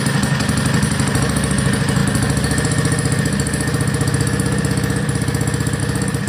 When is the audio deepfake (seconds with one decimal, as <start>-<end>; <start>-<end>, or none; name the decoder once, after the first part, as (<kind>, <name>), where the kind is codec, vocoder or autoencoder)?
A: none